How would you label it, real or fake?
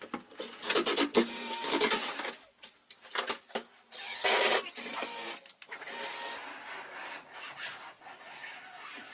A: real